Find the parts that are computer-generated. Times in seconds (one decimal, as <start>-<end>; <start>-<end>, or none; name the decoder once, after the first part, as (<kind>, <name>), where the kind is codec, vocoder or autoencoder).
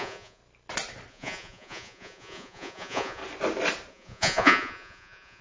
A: 0.0-0.4 (vocoder, Vocos); 1.1-3.2; 3.9-5.4